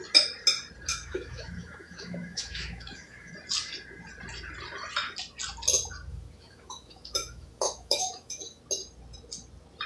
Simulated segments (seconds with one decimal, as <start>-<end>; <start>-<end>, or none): 0.9-3.3; 6.1-8.6